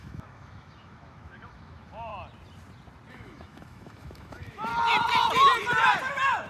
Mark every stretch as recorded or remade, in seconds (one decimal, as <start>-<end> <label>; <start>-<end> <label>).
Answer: 0.0-2.1 remade; 2.1-3.1 recorded; 3.1-4.7 remade; 4.7-6.5 recorded

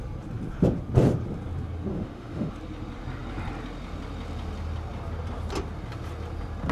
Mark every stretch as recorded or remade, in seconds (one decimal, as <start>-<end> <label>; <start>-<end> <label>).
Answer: 0.0-1.9 recorded; 1.9-2.5 remade; 2.5-6.7 recorded

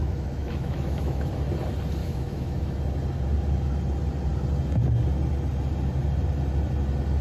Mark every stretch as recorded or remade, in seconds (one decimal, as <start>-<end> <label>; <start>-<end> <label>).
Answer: 0.0-1.3 remade; 1.3-2.0 recorded; 2.0-2.8 remade; 2.8-7.2 recorded

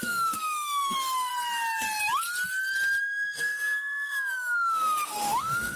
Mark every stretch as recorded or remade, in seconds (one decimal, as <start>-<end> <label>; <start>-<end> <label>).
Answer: 0.0-1.3 remade; 1.3-3.0 recorded; 3.0-5.8 remade

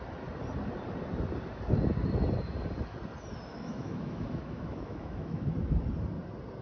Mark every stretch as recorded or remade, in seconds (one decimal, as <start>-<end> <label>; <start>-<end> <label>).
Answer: 0.0-3.5 recorded; 3.5-5.5 remade; 5.5-6.6 recorded

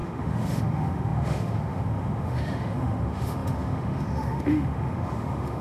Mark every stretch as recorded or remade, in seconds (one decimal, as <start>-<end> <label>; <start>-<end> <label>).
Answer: 0.0-5.6 remade

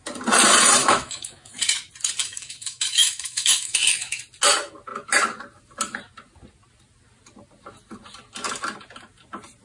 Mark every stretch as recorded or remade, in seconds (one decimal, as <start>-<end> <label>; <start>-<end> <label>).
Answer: 0.0-0.8 recorded; 0.8-1.6 remade; 1.6-2.2 recorded; 2.2-4.2 remade; 4.2-9.6 recorded

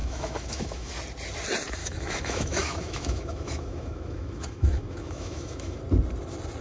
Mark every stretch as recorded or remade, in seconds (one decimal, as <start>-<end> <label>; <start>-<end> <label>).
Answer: 0.0-0.9 remade; 0.9-1.8 recorded; 1.8-5.8 remade; 5.8-6.6 recorded